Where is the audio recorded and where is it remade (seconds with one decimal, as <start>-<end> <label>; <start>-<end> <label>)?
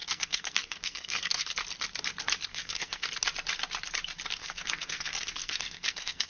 0.0-1.5 remade; 1.5-2.5 recorded; 2.5-3.1 remade; 3.1-4.4 recorded; 4.4-6.3 remade